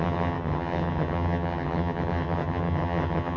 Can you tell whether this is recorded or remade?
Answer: remade